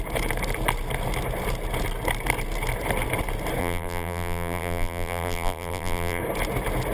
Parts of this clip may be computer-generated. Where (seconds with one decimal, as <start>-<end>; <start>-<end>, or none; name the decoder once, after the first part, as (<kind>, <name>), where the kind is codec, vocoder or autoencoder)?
3.6-6.2 (vocoder, BigVGAN v2)